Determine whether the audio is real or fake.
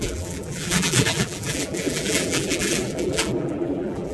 fake